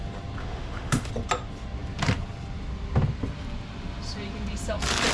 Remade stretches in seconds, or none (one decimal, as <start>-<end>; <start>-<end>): 0.4-1.1